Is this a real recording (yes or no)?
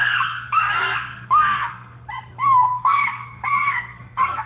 no